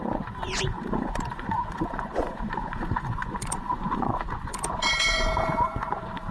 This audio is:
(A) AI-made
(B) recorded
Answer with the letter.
A